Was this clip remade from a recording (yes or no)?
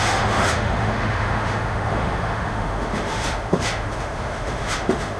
yes